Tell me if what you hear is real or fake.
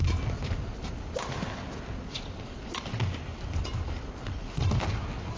real